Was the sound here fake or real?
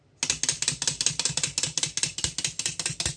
real